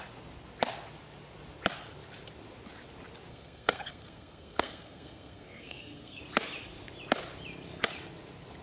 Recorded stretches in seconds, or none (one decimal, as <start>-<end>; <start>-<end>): 0.0-3.3; 6.2-8.6